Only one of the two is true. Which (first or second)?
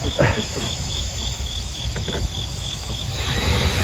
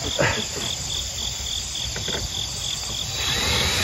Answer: second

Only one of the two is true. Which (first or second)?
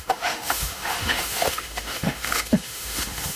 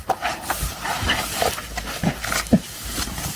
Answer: second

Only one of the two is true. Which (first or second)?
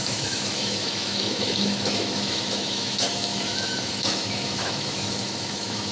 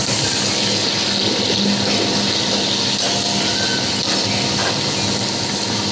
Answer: second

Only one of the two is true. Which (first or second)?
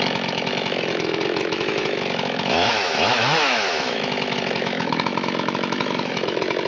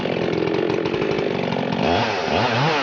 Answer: second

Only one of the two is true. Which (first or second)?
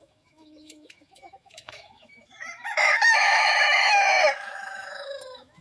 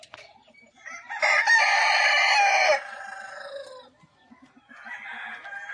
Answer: second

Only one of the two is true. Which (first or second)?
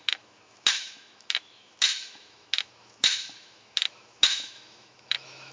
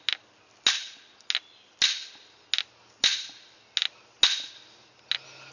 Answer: second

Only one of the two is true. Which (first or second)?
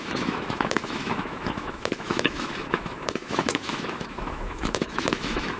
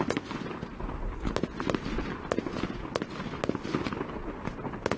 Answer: second